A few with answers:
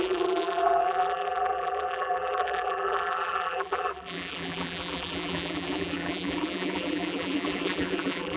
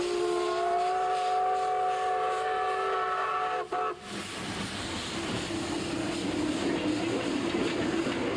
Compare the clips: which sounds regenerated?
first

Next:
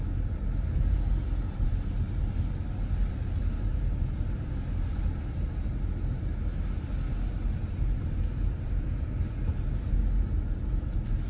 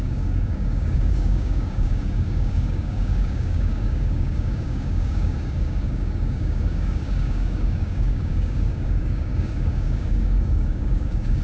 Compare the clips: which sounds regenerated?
second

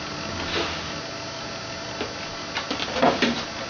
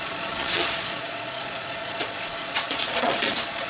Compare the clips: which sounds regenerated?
second